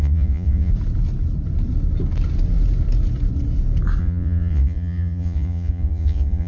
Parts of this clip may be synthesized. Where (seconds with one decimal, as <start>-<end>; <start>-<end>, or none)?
0.0-0.7; 4.0-6.5